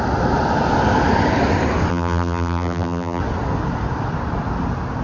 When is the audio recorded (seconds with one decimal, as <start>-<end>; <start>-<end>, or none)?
0.0-1.9; 3.2-5.0